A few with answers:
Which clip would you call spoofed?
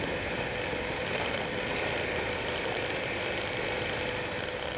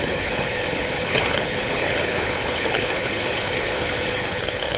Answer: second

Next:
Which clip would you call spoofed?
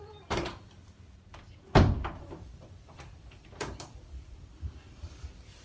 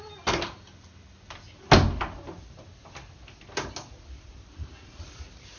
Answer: first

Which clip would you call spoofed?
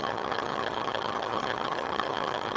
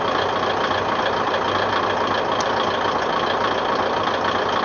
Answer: first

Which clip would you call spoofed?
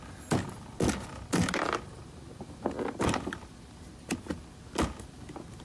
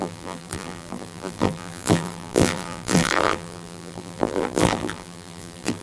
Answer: second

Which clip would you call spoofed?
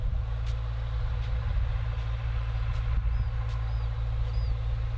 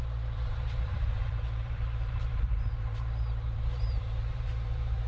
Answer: second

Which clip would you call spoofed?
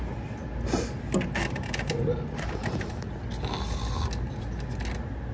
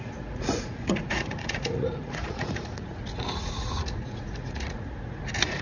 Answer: second